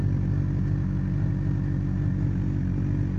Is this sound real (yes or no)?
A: yes